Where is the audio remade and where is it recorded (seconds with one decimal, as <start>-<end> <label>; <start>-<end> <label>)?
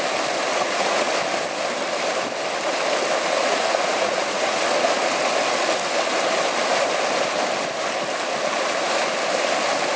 0.0-0.5 recorded; 0.5-1.1 remade; 1.1-3.4 recorded; 3.4-4.6 remade; 4.6-10.0 recorded